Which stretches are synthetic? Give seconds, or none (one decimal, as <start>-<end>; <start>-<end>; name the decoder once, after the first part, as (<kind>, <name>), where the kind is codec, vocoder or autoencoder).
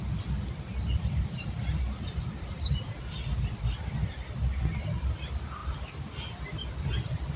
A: none